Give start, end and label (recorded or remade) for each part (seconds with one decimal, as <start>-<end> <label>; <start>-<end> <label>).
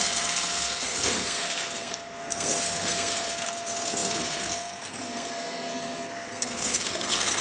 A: 0.0-7.4 remade